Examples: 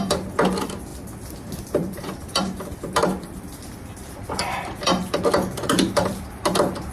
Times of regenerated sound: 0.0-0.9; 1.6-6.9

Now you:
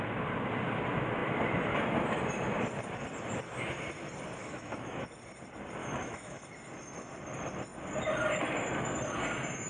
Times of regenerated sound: 4.4-5.0; 5.8-6.4

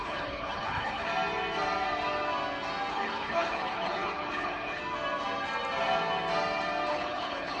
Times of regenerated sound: 0.0-1.1; 2.9-4.8; 6.9-7.6

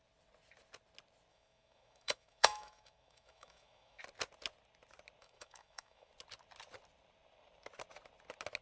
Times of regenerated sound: 1.3-4.0; 5.2-6.1

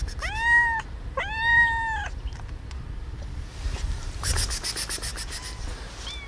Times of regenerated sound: 3.5-4.3

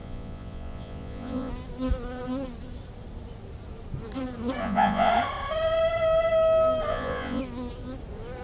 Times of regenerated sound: 0.0-1.5; 4.6-5.1; 6.9-7.4